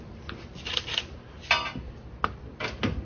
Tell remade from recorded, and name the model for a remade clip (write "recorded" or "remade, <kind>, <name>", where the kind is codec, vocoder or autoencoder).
recorded